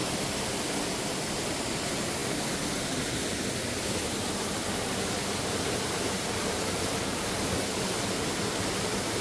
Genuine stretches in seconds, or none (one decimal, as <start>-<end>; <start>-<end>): 0.0-9.2